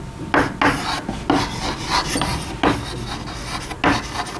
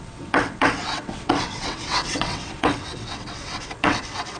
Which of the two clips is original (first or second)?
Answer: first